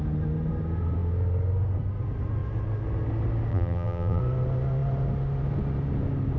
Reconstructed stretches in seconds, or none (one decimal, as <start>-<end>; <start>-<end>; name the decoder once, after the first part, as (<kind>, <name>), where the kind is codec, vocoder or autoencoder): 3.5-4.2 (vocoder, BigVGAN v2)